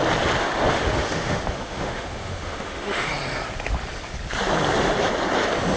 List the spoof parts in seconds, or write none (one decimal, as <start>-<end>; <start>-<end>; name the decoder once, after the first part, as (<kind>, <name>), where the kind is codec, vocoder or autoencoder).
0.4-3.1 (autoencoder, DAC-VAE)